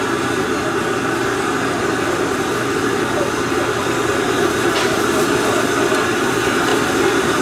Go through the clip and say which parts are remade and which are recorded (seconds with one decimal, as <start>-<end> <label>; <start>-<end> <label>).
0.0-7.4 recorded